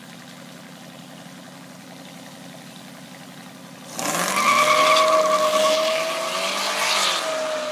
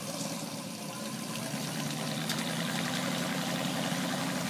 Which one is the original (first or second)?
first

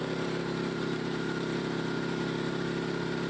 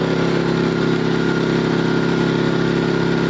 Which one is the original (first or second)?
second